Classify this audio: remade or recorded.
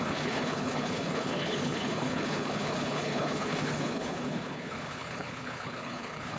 remade